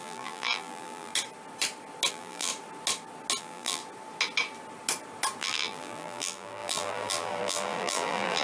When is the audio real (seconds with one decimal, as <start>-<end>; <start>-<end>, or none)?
1.1-2.1; 2.5-3.4; 3.8-5.4